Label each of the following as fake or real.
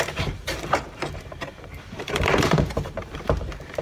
fake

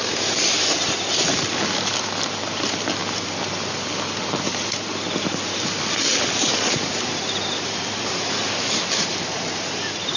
real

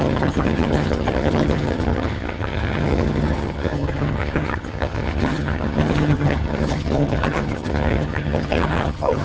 fake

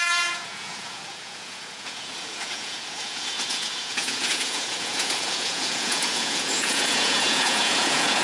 fake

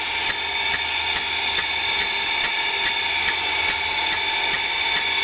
real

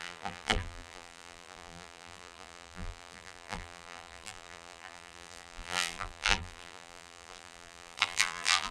fake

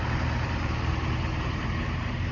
fake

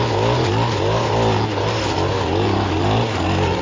real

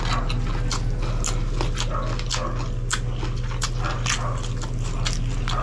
real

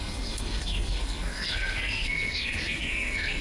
fake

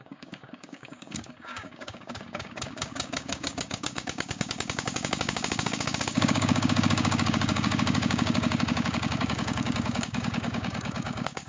fake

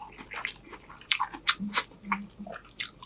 real